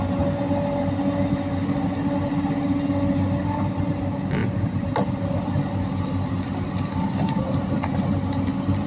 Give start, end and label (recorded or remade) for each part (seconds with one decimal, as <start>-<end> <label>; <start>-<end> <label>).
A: 0.0-8.9 recorded